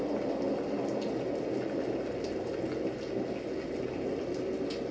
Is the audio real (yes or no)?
yes